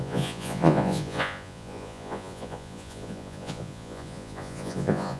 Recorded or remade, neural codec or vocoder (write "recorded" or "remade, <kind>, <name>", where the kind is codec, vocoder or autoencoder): remade, vocoder, Vocos